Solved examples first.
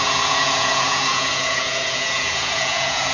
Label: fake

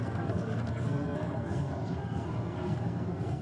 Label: fake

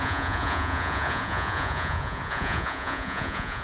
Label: fake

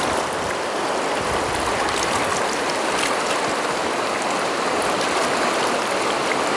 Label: real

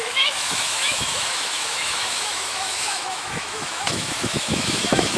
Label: fake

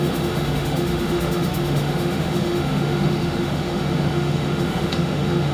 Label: fake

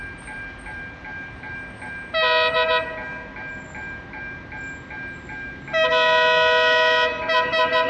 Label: real